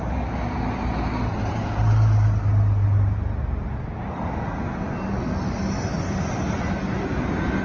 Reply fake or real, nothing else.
real